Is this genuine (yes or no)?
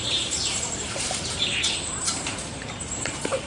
no